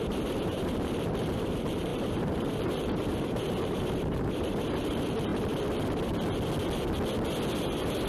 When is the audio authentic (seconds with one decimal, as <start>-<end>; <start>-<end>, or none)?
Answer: 5.3-7.6